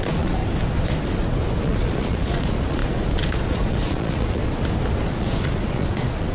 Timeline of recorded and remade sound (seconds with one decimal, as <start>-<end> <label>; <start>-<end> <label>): 0.0-0.4 remade; 0.4-1.6 recorded; 1.6-4.4 remade; 4.4-5.1 recorded; 5.1-6.3 remade